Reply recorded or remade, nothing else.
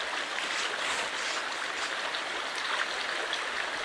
recorded